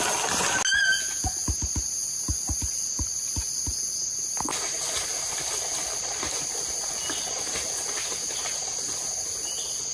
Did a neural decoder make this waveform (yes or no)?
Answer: no